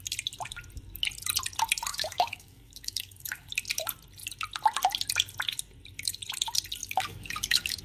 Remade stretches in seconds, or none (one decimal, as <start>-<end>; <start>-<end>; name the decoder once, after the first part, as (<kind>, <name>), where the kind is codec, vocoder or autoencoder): 1.9-3.5 (codec, DAC); 6.8-7.8